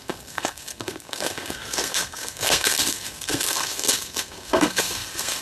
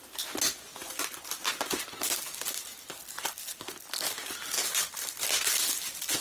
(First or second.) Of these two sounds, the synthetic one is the first